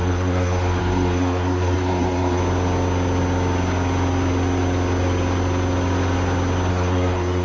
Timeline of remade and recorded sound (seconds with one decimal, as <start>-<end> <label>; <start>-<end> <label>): 0.0-2.4 remade; 2.4-6.7 recorded; 6.7-7.4 remade